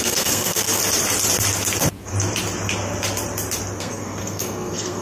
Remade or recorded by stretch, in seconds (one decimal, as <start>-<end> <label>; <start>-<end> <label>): 0.0-0.8 remade; 0.8-3.8 recorded; 3.8-5.0 remade